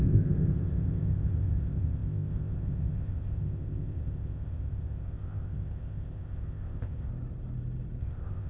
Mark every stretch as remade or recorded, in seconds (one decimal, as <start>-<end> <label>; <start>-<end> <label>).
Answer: 0.0-7.1 remade; 7.1-8.0 recorded; 8.0-8.5 remade